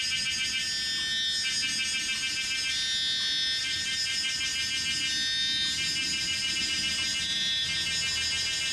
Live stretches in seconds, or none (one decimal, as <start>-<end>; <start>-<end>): 0.0-3.6; 4.4-6.0; 6.6-7.1; 7.6-8.7